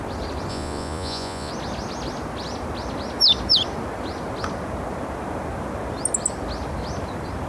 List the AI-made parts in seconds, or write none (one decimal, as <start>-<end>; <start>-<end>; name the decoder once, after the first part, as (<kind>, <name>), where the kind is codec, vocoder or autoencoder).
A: 0.5-1.5 (vocoder, Vocos)